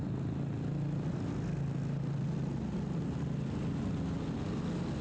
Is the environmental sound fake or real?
real